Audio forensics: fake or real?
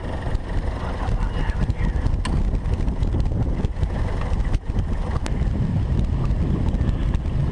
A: real